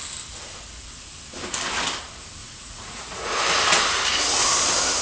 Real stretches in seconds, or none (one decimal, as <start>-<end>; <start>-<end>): 0.0-2.4; 3.4-5.0